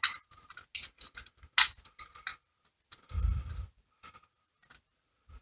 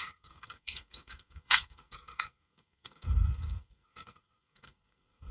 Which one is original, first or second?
first